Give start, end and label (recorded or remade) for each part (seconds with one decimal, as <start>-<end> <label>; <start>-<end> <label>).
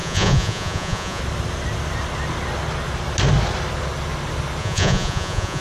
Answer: 0.0-1.2 remade; 1.2-4.6 recorded; 4.6-5.6 remade